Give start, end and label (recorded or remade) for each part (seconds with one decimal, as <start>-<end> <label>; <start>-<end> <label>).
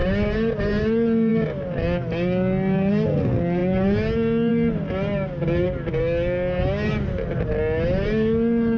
0.0-8.8 recorded